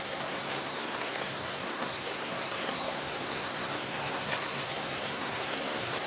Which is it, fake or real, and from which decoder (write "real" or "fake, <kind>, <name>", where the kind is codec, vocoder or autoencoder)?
fake, codec, SNAC